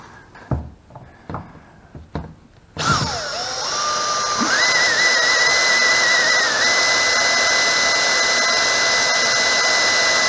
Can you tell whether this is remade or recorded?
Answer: recorded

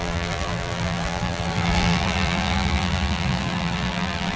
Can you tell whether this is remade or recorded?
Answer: remade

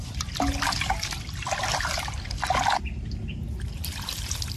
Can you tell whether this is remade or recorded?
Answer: recorded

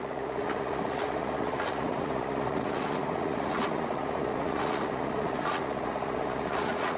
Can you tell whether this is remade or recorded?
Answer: remade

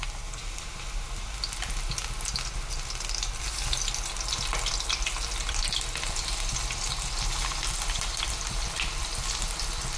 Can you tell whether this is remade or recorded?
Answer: recorded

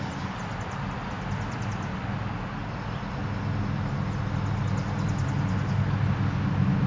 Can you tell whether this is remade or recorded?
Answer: recorded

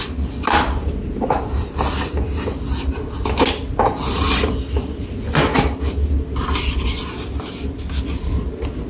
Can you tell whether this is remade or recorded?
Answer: recorded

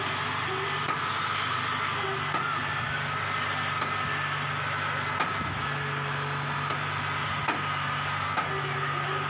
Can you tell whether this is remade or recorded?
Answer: recorded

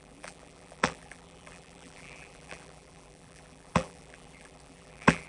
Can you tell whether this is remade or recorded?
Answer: remade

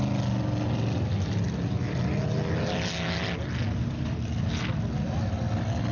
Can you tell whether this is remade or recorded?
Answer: recorded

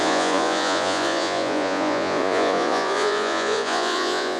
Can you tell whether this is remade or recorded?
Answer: remade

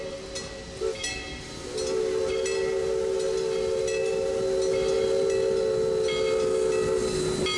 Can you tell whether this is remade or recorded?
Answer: recorded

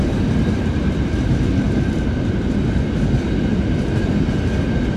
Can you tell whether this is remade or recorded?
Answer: recorded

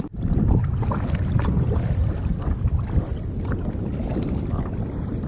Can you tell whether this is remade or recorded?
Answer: recorded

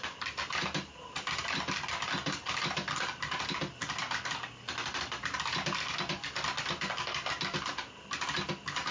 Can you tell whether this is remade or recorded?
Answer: recorded